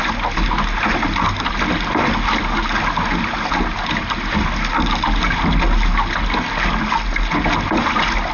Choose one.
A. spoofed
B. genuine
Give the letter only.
B